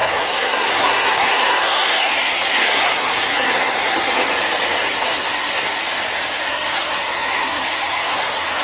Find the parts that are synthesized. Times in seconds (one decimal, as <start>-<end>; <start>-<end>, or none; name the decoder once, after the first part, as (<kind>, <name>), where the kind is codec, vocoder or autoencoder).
0.0-4.2 (codec, SNAC); 4.8-5.8; 6.4-8.6